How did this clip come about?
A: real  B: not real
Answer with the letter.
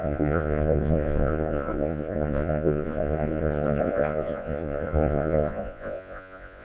B